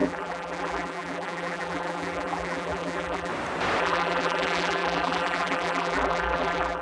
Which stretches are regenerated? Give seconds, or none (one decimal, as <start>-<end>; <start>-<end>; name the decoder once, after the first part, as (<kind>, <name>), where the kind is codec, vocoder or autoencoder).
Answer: 0.0-3.3 (vocoder, BigVGAN v2); 3.8-6.8